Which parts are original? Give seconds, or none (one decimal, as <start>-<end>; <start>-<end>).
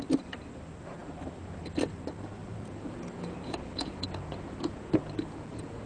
0.0-2.4